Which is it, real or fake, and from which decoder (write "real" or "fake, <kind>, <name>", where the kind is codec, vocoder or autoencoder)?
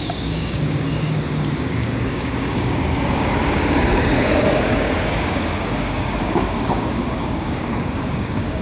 fake, codec, DAC